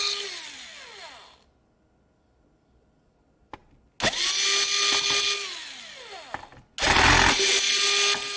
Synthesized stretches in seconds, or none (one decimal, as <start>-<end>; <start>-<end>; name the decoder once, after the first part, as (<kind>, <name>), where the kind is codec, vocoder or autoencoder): none